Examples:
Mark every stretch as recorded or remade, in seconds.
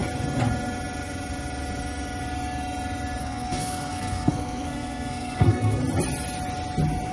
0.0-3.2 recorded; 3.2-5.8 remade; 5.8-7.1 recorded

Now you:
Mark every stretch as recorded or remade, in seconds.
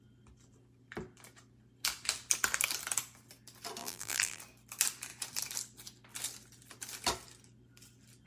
0.0-3.8 recorded; 3.8-4.4 remade; 4.4-8.3 recorded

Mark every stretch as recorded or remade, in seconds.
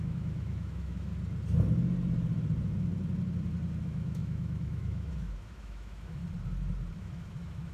0.0-1.1 remade; 1.1-3.8 recorded; 3.8-6.2 remade; 6.2-7.0 recorded; 7.0-7.7 remade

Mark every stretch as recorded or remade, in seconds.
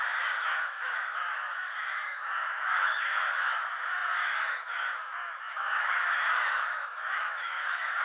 0.0-8.0 remade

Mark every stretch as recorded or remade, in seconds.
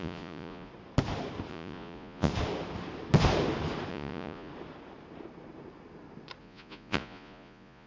0.0-0.7 remade; 0.7-1.5 recorded; 1.5-2.3 remade; 2.3-3.9 recorded; 3.9-4.5 remade; 4.5-6.4 recorded; 6.4-7.9 remade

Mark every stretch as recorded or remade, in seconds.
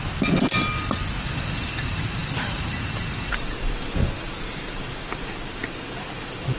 0.0-6.6 recorded